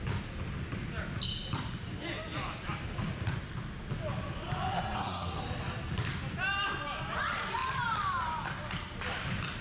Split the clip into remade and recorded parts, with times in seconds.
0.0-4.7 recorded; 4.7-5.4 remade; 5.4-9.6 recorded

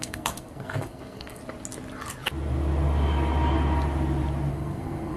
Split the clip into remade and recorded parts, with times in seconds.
0.0-1.4 remade; 1.4-4.5 recorded; 4.5-5.2 remade

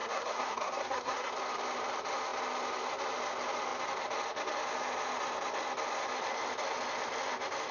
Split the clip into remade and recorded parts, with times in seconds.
0.0-1.3 remade; 1.3-7.7 recorded

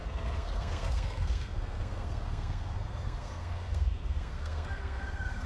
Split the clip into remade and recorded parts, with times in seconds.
0.0-5.5 remade